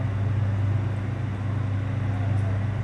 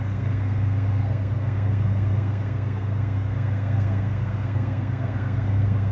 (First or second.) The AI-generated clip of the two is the second